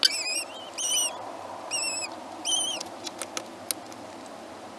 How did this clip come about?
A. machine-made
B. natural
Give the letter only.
B